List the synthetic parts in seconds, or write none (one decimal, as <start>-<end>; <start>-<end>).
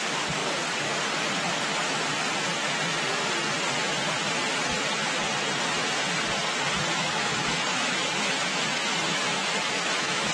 6.9-10.3